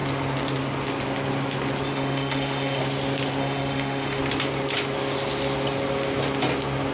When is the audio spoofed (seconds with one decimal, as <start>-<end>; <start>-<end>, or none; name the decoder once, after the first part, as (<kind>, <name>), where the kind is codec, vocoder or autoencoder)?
1.9-2.8 (autoencoder, DAC-VAE); 3.4-4.2